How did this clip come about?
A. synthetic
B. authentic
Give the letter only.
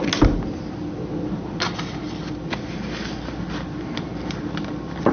B